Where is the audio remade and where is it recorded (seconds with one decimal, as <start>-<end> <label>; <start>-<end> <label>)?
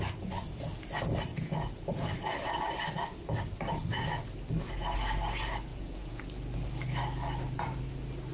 0.0-1.3 recorded; 1.3-2.1 remade; 2.1-5.7 recorded; 5.7-6.2 remade; 6.2-8.3 recorded